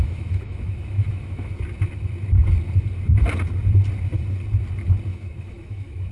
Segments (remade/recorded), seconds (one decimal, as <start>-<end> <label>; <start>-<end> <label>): 0.0-1.5 remade; 1.5-5.1 recorded; 5.1-6.1 remade